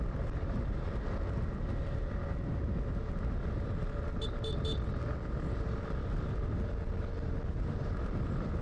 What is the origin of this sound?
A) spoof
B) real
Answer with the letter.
B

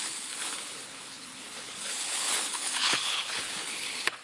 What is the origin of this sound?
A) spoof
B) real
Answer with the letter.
A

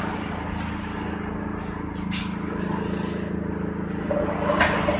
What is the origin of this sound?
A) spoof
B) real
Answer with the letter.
B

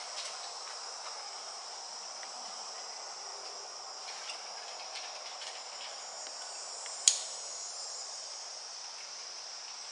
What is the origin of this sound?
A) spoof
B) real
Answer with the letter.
B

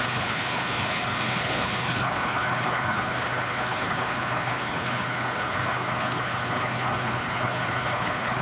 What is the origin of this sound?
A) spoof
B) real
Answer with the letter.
A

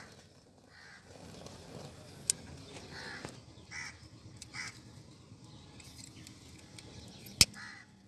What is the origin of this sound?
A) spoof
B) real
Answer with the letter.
B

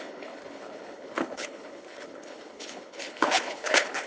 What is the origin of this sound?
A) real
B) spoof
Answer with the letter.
B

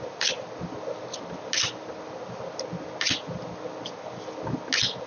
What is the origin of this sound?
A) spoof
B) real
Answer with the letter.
B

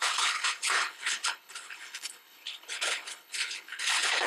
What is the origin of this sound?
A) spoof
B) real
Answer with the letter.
A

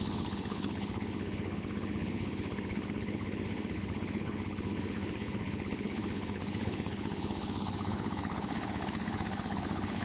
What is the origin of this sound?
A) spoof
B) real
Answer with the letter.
A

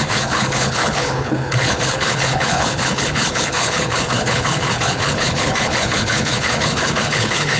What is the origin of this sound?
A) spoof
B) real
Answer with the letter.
A